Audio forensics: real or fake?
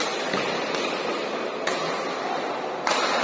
real